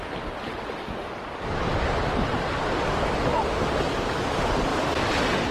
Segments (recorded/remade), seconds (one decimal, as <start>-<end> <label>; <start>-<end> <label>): 0.0-5.5 recorded